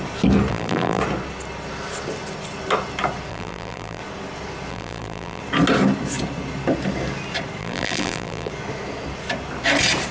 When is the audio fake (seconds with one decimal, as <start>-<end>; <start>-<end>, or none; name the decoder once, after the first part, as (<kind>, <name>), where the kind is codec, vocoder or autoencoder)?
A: 0.5-1.0 (vocoder, BigVGAN v2); 3.3-4.0; 4.7-5.4; 7.6-8.5